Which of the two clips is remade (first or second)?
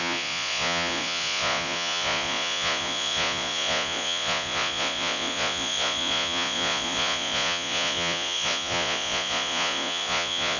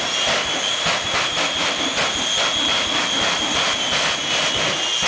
first